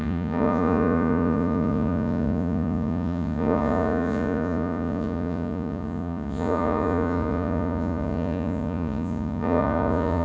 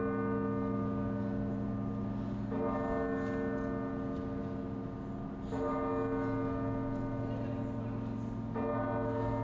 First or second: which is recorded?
second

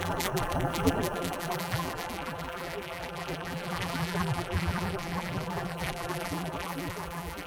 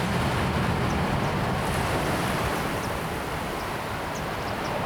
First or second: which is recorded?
second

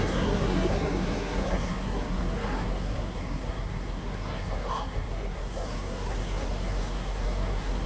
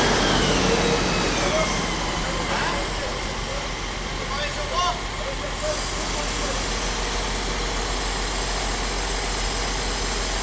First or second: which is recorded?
second